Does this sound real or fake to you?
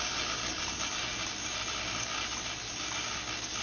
real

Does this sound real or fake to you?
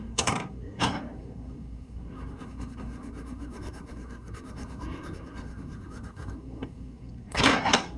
fake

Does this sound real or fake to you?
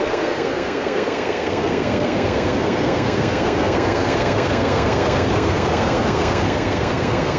fake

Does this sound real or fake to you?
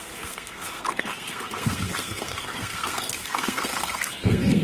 fake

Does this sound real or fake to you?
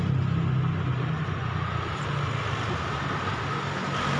real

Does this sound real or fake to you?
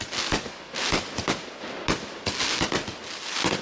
real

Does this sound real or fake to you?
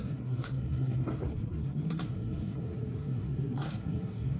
fake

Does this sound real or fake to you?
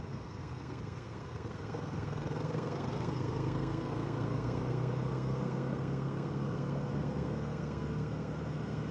fake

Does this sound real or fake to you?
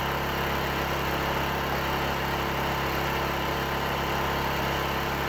real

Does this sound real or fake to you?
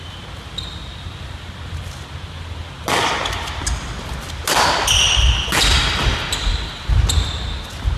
real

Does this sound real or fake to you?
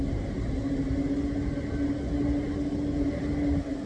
real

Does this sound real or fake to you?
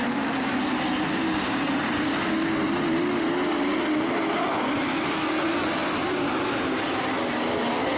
real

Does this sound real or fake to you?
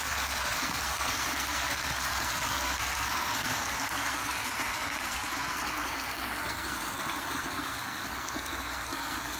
fake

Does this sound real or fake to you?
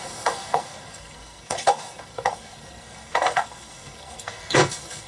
fake